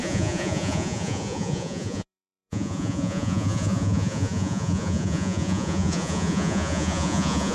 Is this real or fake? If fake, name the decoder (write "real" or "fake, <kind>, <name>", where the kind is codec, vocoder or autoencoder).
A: fake, vocoder, Vocos